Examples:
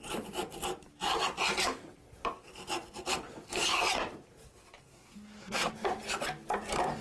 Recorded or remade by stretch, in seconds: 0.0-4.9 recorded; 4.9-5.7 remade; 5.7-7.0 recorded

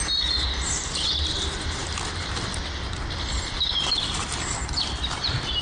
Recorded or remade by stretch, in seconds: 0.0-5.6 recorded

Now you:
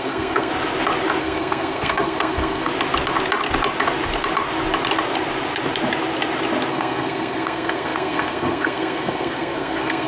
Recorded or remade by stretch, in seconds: 0.0-0.5 remade; 0.5-1.2 recorded; 1.2-2.7 remade; 2.7-6.7 recorded; 6.7-10.1 remade